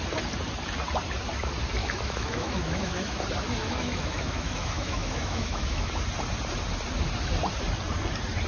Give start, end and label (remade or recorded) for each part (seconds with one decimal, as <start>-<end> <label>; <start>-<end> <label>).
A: 0.0-1.8 recorded; 1.8-3.2 remade; 3.2-3.6 recorded; 3.6-5.9 remade; 5.9-8.5 recorded